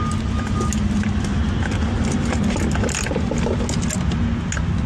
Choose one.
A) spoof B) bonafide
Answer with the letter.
B